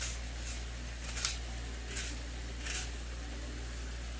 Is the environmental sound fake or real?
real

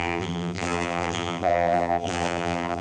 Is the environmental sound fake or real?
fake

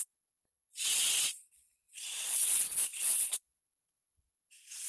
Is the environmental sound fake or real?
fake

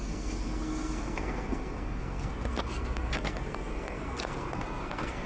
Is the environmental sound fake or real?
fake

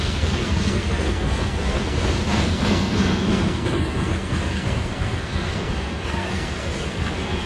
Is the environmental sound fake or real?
fake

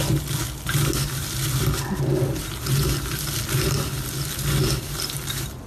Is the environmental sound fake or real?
real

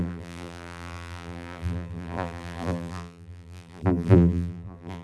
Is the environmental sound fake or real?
fake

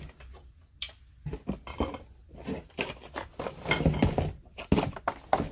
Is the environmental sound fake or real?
real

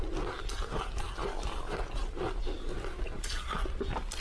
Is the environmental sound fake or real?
real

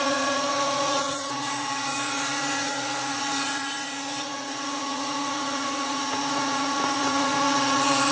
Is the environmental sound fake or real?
fake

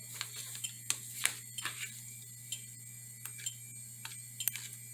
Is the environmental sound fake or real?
real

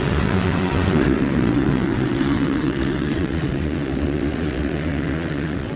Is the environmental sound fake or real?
fake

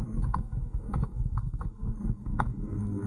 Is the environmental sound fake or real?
fake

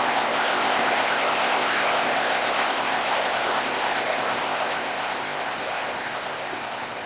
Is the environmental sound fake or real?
fake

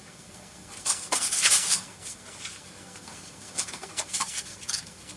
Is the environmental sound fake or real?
fake